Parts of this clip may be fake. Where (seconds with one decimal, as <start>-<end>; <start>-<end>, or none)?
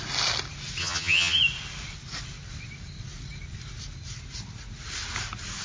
0.8-1.4